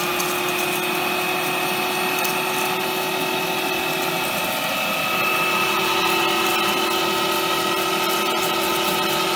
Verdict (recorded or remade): recorded